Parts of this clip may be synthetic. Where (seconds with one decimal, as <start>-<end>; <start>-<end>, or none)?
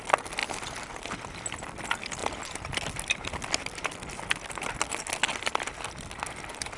none